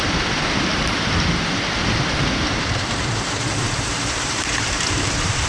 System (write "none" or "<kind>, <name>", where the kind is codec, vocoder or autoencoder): vocoder, BigVGAN v2